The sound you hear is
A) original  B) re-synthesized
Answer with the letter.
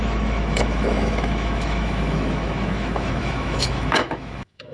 B